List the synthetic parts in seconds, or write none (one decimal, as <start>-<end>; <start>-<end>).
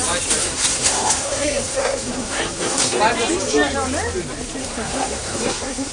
0.4-3.0; 4.6-5.9